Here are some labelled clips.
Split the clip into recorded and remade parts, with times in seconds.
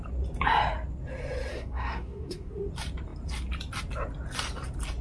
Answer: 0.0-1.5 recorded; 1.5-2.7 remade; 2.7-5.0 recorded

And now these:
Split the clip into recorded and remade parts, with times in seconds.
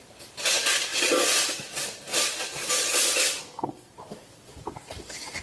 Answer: 0.0-3.4 recorded; 3.4-3.9 remade; 3.9-5.4 recorded